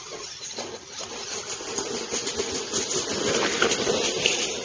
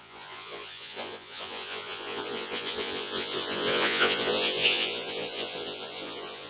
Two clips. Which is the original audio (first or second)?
first